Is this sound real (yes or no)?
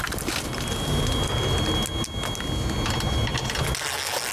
yes